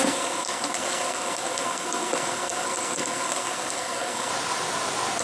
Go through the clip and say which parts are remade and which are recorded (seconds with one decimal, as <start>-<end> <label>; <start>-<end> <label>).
0.0-4.3 remade; 4.3-5.2 recorded